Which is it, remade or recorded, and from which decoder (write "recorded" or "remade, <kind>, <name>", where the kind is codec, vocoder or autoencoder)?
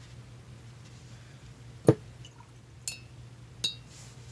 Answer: recorded